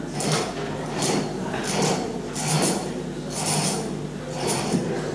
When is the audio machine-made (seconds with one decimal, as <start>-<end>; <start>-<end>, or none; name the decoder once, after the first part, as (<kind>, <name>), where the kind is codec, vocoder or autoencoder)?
none